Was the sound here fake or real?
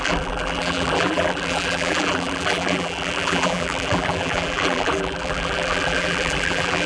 fake